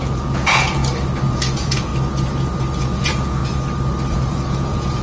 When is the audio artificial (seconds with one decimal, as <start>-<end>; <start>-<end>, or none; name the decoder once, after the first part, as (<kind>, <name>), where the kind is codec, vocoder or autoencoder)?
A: 0.0-0.8 (vocoder, Vocos); 1.3-1.9; 2.8-3.4; 4.1-5.0